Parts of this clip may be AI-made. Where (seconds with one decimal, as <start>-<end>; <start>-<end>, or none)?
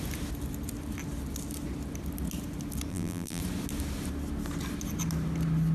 2.9-3.4